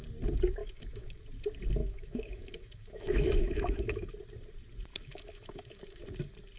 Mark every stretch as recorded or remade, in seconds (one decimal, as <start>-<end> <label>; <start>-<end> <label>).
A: 0.0-0.6 recorded; 0.6-1.2 remade; 1.2-1.8 recorded; 1.8-4.1 remade; 4.1-4.9 recorded; 4.9-6.0 remade; 6.0-6.6 recorded